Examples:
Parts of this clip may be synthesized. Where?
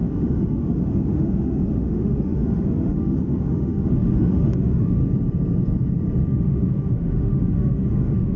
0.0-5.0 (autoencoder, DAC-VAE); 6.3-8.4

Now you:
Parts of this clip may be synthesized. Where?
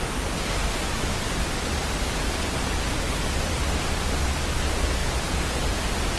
5.0-5.6 (vocoder, Vocos)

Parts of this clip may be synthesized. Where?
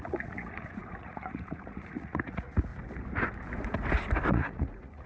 0.0-2.7 (vocoder, Vocos); 4.3-5.1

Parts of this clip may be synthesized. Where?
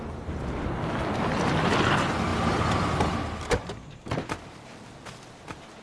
none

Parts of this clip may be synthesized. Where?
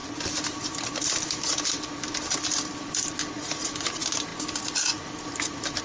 0.0-3.2 (vocoder, BigVGAN v2)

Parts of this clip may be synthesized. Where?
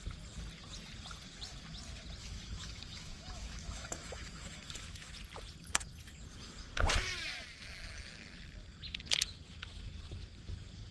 2.2-5.1 (autoencoder, DAC-VAE)